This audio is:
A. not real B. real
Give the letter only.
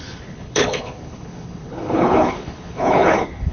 A